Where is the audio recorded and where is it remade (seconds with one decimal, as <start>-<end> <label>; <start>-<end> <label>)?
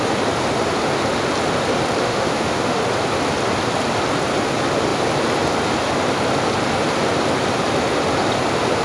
0.0-2.0 recorded; 2.0-2.8 remade; 2.8-8.8 recorded